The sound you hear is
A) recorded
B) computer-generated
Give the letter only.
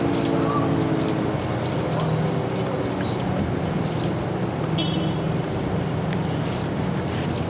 A